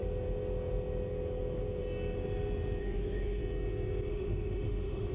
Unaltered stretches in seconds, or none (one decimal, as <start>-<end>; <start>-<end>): 0.0-2.8; 3.4-4.1